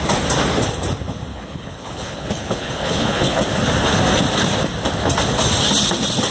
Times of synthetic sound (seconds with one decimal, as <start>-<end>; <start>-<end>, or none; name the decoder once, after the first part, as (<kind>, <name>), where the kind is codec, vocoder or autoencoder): 1.3-3.4 (codec, HILCodec)